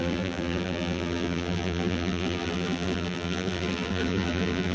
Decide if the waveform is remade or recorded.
remade